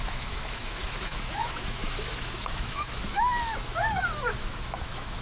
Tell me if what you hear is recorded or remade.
remade